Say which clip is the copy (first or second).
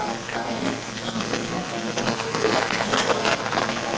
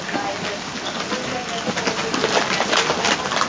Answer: first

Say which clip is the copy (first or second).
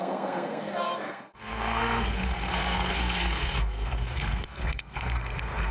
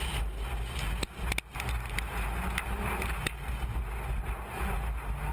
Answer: first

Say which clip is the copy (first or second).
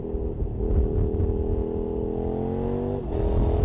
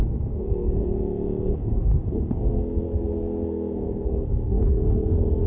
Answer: second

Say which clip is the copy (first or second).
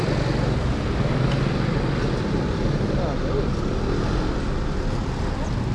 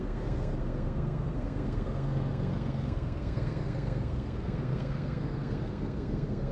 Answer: second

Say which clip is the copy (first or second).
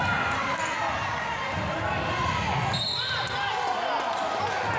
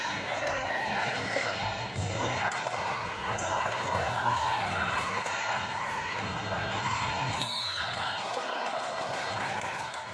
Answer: second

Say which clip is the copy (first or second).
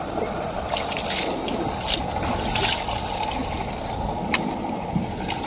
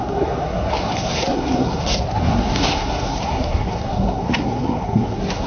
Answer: second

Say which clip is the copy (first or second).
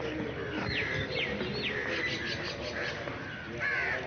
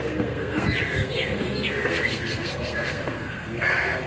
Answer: second